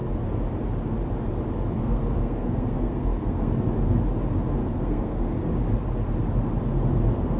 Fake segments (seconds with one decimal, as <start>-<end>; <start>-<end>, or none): 1.8-3.5; 4.6-5.4